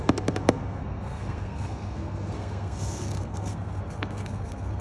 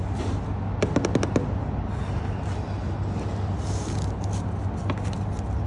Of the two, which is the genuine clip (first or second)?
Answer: second